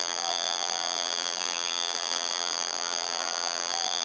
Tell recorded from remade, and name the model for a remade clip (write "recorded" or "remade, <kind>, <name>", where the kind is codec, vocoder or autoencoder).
remade, vocoder, BigVGAN v2